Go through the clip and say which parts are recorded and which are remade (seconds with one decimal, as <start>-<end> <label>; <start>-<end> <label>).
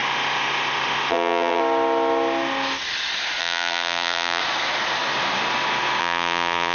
0.0-1.1 recorded; 1.1-1.6 remade; 1.6-3.4 recorded; 3.4-4.4 remade; 4.4-6.0 recorded; 6.0-6.7 remade